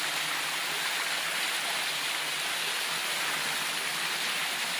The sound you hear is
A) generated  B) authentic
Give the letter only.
B